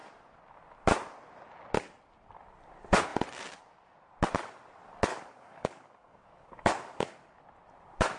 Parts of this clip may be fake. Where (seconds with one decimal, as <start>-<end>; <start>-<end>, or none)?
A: 5.1-7.4